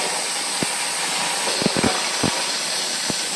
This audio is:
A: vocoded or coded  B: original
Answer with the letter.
B